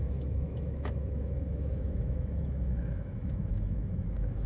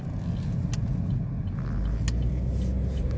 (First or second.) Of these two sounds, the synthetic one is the first